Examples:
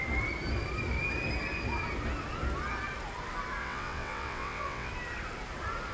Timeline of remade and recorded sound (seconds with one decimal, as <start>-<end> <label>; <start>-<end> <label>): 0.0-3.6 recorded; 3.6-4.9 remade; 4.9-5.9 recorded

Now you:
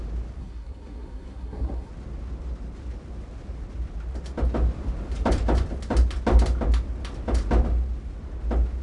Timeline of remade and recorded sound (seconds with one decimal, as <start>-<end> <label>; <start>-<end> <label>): 0.0-0.4 recorded; 0.4-1.9 remade; 1.9-8.8 recorded

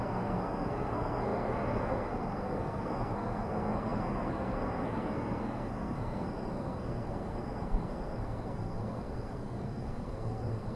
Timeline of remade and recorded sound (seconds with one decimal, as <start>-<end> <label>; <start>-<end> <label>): 0.0-10.8 remade

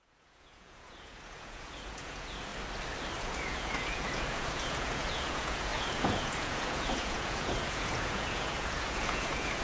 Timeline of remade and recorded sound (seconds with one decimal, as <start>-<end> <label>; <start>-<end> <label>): 0.0-2.5 remade; 2.5-3.2 recorded; 3.2-9.6 remade

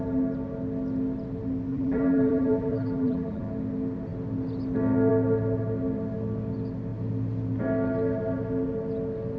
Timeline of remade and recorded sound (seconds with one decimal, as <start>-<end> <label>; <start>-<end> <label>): 0.0-1.7 recorded; 1.7-3.5 remade; 3.5-9.4 recorded

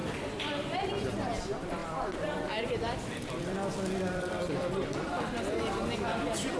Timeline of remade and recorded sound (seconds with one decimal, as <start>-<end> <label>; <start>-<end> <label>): 0.0-0.9 remade; 0.9-1.8 recorded; 1.8-5.4 remade; 5.4-6.6 recorded

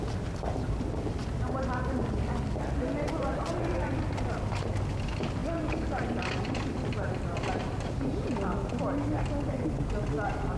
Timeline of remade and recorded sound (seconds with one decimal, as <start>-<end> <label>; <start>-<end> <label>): 0.0-10.6 recorded

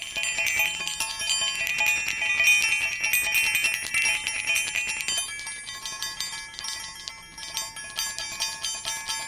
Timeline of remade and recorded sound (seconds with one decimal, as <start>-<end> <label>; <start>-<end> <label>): 0.0-9.3 recorded